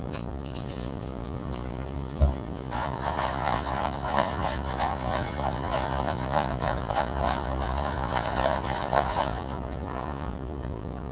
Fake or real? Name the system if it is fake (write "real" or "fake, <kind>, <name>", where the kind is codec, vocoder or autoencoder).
fake, vocoder, Vocos